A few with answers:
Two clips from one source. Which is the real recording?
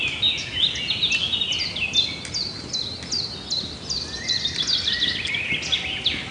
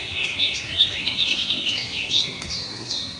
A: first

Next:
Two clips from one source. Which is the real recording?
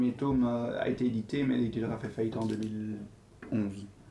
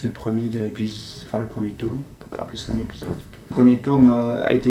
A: first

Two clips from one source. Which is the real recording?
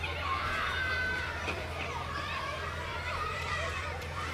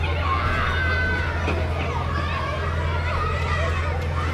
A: second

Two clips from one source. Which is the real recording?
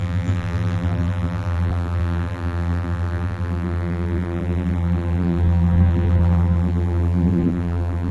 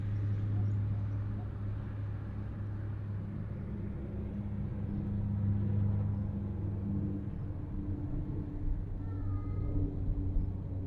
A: second